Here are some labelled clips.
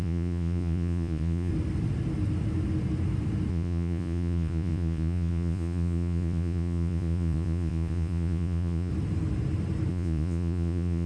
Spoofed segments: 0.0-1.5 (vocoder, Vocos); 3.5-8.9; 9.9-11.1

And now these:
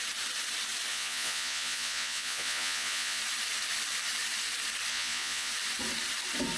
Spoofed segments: 0.9-3.2 (vocoder, Vocos); 4.9-5.5

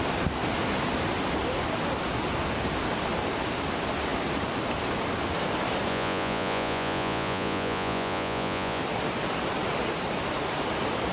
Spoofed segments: 5.9-8.8 (vocoder, Vocos)

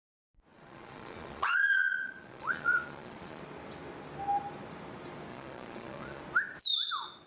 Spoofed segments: 0.5-3.4 (vocoder, Vocos); 5.3-6.2

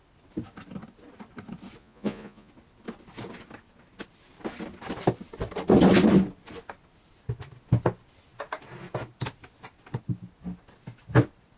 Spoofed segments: 1.8-2.5 (vocoder, Vocos)

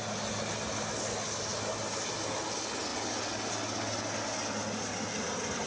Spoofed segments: none

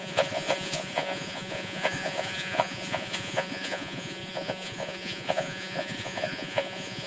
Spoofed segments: 0.0-7.1 (vocoder, Vocos)